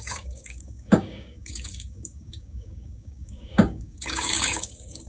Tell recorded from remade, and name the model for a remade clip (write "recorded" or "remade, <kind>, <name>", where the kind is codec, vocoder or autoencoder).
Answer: remade, codec, DAC